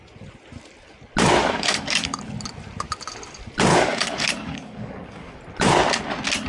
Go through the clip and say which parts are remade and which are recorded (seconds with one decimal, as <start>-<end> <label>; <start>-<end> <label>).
0.0-1.4 recorded; 1.4-2.2 remade; 2.2-3.7 recorded; 3.7-5.4 remade; 5.4-6.5 recorded